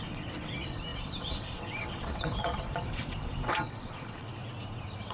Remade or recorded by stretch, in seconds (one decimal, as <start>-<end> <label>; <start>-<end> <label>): 0.0-5.1 remade